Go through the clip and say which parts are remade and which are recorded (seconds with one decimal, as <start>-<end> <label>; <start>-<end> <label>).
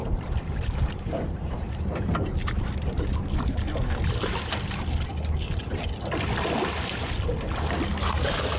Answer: 0.0-1.9 remade; 1.9-2.4 recorded; 2.4-3.2 remade; 3.2-8.6 recorded